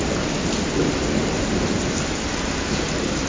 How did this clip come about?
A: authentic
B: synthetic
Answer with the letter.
A